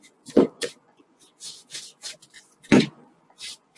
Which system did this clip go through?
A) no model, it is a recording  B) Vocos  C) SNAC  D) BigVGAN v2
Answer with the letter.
B